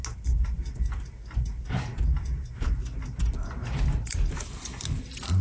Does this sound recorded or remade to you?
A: recorded